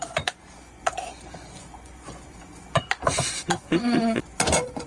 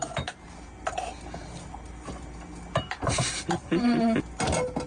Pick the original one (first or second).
second